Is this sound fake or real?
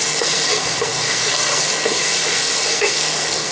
fake